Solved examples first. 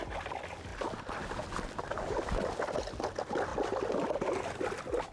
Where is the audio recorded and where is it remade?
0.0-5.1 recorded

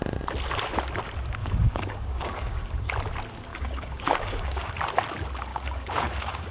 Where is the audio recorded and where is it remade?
0.0-1.4 recorded; 1.4-2.9 remade; 2.9-3.5 recorded; 3.5-4.7 remade; 4.7-5.5 recorded; 5.5-6.5 remade

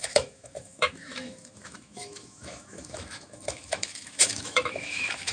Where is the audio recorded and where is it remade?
0.0-5.3 remade

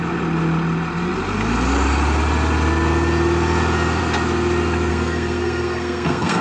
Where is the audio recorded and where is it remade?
0.0-4.9 recorded; 4.9-6.4 remade